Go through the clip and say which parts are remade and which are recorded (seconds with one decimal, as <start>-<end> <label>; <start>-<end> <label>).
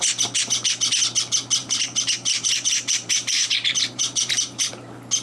0.0-1.6 recorded; 1.6-4.7 remade; 4.7-5.2 recorded